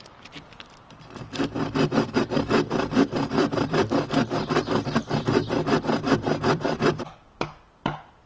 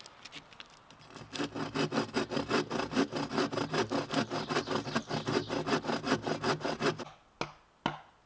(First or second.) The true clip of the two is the second